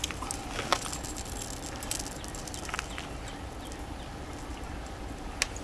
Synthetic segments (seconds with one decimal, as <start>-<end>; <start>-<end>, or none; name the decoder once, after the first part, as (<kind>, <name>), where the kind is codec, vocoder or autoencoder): none